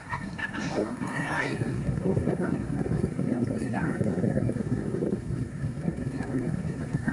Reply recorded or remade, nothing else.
remade